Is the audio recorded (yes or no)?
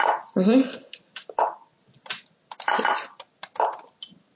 yes